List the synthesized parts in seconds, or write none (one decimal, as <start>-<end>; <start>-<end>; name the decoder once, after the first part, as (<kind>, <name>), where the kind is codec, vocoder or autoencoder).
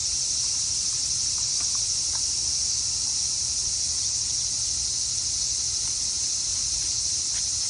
0.0-1.6 (vocoder, BigVGAN v2); 6.5-7.7